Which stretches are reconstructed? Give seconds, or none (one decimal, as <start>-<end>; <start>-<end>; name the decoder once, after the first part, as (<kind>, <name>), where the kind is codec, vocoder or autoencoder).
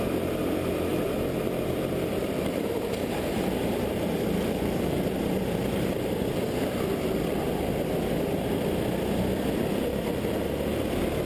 0.9-1.5 (vocoder, BigVGAN v2); 2.2-6.2